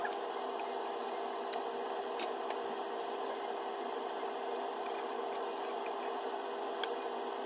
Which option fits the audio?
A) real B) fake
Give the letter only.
A